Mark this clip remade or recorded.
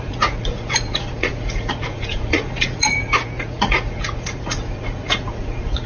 remade